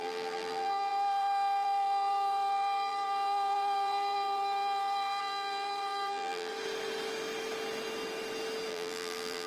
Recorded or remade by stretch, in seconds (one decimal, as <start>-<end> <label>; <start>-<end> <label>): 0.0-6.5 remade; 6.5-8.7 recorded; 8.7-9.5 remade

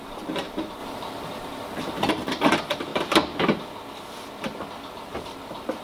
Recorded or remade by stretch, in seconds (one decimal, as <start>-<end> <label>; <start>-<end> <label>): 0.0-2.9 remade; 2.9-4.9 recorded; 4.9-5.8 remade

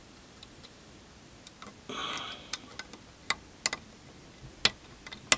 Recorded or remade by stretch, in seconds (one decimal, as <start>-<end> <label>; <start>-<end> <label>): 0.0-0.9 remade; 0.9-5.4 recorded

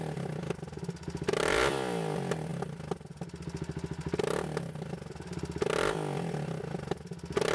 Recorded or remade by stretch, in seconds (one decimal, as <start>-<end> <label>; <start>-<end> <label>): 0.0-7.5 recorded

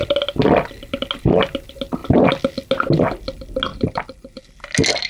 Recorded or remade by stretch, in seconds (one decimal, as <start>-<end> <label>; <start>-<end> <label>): 0.0-3.7 recorded; 3.7-4.4 remade; 4.4-5.1 recorded